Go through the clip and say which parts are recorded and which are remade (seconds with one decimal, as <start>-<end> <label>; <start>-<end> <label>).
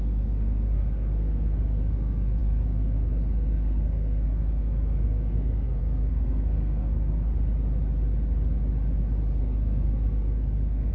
0.0-7.3 remade; 7.3-9.4 recorded; 9.4-10.9 remade